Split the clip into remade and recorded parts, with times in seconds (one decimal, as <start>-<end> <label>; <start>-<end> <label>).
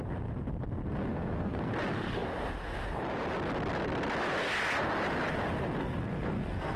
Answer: 0.0-1.1 recorded; 1.1-1.7 remade; 1.7-5.8 recorded; 5.8-6.8 remade